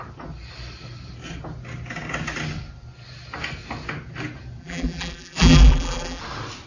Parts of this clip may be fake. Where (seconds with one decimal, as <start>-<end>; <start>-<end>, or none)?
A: 4.6-6.2